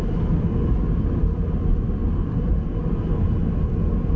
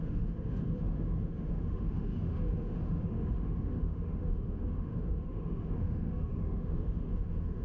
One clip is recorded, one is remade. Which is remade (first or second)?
second